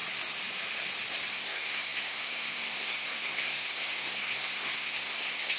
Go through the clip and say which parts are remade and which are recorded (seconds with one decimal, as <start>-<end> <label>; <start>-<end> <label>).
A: 0.0-1.3 recorded; 1.3-5.6 remade